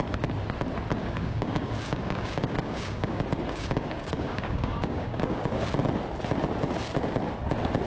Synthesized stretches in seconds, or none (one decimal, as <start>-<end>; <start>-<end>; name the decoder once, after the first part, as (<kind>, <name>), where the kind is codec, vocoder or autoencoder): 1.0-5.7 (codec, DAC)